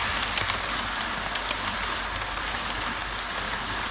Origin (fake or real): real